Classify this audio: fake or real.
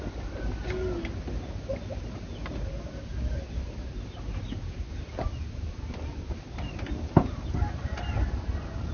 real